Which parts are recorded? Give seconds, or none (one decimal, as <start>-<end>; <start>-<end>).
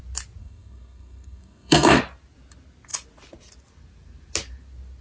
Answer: 0.0-0.4; 2.0-5.0